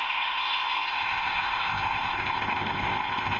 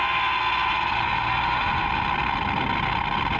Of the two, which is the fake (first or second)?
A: first